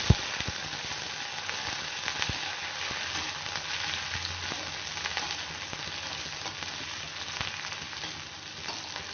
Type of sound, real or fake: real